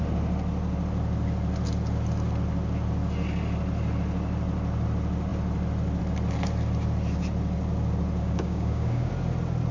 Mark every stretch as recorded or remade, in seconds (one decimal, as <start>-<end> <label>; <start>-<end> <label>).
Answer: 0.0-8.2 recorded; 8.2-9.1 remade; 9.1-9.7 recorded